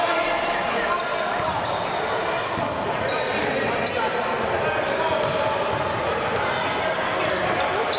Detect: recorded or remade recorded